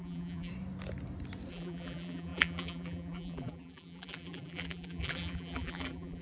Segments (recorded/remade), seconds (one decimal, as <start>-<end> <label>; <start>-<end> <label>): 0.0-0.5 remade; 0.5-1.5 recorded; 1.5-6.2 remade